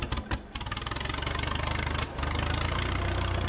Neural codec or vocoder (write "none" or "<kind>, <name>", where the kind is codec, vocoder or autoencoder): none